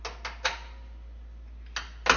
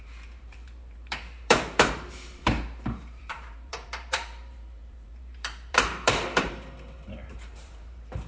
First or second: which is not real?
second